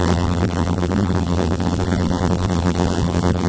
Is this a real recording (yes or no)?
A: no